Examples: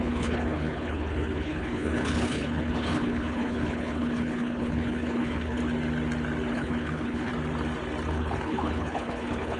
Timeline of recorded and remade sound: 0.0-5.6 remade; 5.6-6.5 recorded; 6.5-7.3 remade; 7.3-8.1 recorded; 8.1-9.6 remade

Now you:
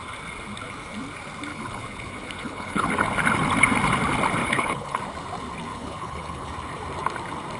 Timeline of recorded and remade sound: 0.0-1.5 recorded; 1.5-2.9 remade; 2.9-4.4 recorded; 4.4-5.0 remade; 5.0-5.7 recorded; 5.7-6.5 remade; 6.5-7.6 recorded

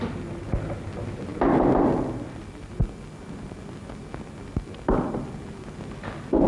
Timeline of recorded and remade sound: 0.0-6.5 recorded